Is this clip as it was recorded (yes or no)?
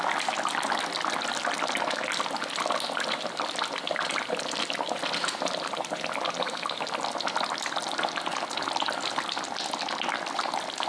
yes